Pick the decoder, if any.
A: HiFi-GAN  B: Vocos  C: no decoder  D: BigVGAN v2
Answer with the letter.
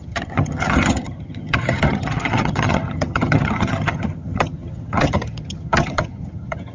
A